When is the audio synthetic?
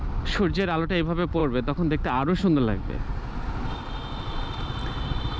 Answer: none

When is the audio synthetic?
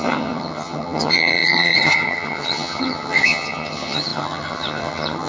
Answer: 0.0-5.3 (vocoder, HiFi-GAN)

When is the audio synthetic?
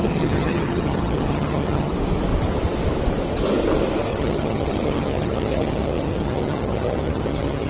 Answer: 0.0-1.9 (vocoder, HiFi-GAN); 4.1-7.7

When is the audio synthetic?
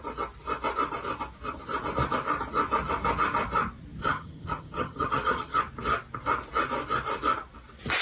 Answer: 4.0-5.6 (vocoder, HiFi-GAN)